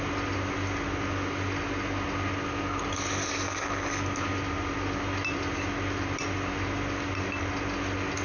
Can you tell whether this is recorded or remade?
recorded